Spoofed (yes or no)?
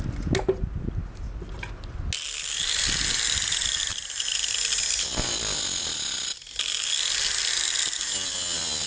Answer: no